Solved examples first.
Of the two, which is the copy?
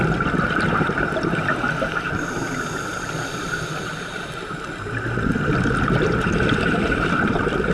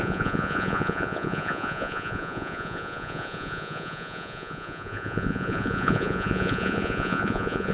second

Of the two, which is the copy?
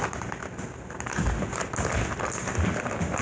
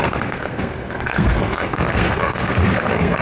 second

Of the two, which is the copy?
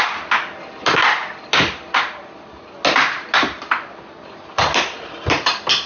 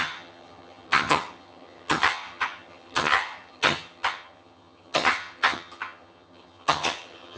second